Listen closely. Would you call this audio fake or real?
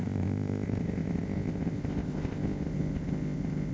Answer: fake